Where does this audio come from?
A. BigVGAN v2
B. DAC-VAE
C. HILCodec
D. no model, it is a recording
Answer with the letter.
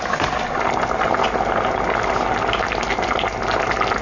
D